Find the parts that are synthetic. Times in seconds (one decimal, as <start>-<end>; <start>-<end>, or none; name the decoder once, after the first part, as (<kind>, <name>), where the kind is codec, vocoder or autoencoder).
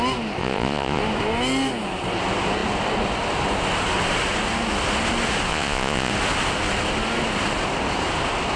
0.4-1.0 (vocoder, Vocos); 5.5-6.1